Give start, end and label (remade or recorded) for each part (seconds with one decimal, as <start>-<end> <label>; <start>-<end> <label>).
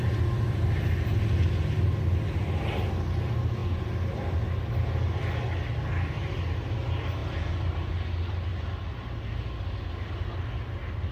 0.0-11.1 recorded